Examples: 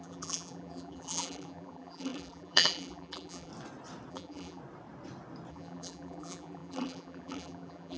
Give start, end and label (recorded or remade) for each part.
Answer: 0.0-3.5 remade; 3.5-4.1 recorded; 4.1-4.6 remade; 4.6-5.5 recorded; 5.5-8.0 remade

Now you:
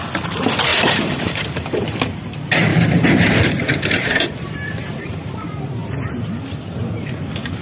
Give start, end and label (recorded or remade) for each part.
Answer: 0.0-0.7 recorded; 0.7-1.4 remade; 1.4-2.7 recorded; 2.7-5.1 remade; 5.1-7.6 recorded